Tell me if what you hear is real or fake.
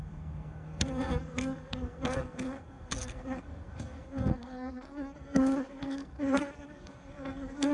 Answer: fake